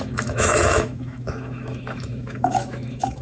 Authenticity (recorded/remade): remade